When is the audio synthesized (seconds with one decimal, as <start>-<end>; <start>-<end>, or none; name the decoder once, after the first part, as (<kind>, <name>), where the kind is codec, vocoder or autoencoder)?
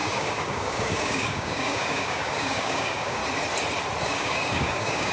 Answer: 0.0-3.2 (codec, DAC); 4.0-5.1